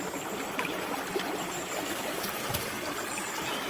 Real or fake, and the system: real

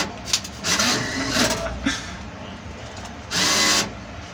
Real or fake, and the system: real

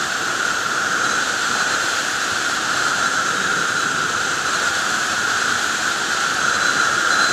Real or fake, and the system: fake, vocoder, BigVGAN v2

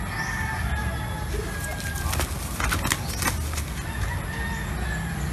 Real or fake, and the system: real